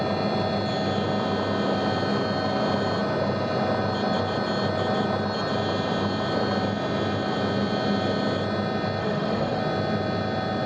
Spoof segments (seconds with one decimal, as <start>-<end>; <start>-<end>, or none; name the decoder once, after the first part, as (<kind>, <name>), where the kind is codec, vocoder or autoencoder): 9.0-9.6 (autoencoder, DAC-VAE)